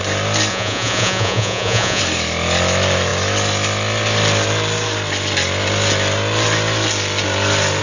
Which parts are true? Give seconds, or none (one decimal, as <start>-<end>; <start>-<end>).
0.0-0.5; 2.0-7.8